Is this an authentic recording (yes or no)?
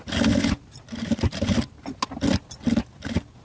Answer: yes